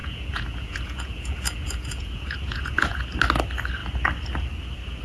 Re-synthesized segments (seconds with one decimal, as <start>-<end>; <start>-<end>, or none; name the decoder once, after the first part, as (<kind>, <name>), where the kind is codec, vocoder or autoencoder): 0.0-3.0 (vocoder, Vocos)